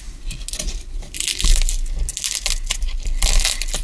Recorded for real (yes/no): yes